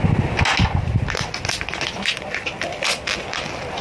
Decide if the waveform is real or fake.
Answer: real